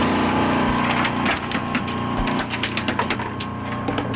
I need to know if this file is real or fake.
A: real